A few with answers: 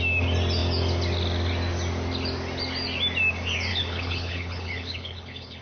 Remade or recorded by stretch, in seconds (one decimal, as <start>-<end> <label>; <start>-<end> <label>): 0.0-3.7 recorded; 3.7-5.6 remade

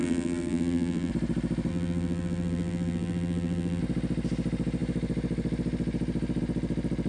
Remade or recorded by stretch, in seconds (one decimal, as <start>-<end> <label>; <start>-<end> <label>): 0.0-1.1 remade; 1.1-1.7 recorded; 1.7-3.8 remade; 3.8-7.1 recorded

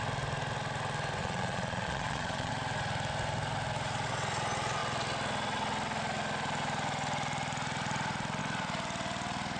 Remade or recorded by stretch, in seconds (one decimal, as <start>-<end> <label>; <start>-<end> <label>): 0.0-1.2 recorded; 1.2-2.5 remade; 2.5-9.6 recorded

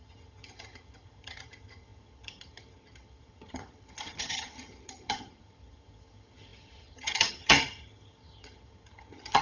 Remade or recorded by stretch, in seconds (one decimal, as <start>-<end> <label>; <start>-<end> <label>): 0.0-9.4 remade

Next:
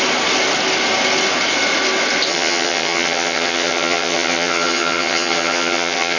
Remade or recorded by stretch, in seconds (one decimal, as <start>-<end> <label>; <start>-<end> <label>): 0.0-2.3 recorded; 2.3-6.2 remade